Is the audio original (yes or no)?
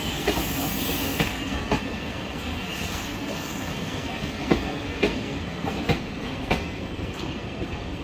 no